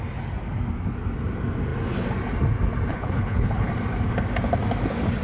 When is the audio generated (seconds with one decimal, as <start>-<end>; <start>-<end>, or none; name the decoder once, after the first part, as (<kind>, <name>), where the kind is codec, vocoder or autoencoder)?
2.9-3.7 (codec, HILCodec)